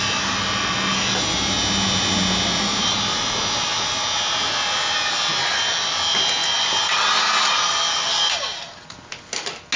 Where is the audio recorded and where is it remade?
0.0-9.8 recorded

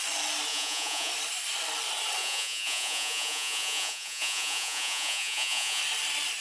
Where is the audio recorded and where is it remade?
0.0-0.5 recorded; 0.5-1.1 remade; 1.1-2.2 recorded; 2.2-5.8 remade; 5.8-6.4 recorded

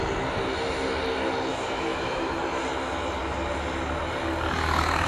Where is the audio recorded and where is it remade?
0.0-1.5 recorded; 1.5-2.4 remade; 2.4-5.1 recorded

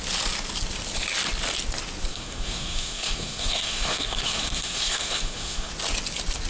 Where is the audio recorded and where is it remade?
0.0-2.1 recorded; 2.1-5.7 remade; 5.7-6.5 recorded

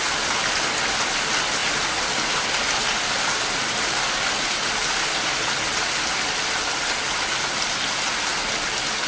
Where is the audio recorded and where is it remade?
0.0-9.1 recorded

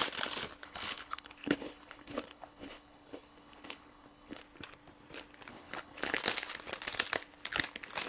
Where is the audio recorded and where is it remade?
0.0-0.6 recorded; 0.6-4.4 remade; 4.4-5.5 recorded; 5.5-6.2 remade; 6.2-8.1 recorded